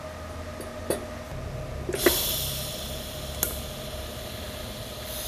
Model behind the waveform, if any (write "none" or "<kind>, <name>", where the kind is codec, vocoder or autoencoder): none